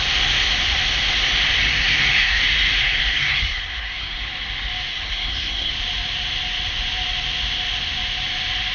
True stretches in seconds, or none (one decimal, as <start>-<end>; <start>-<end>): 0.0-1.7; 2.4-2.8; 4.2-4.9; 5.7-8.7